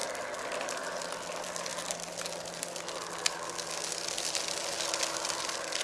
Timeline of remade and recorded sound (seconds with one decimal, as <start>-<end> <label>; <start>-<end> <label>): 0.0-5.8 recorded